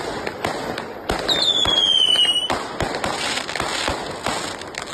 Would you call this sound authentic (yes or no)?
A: yes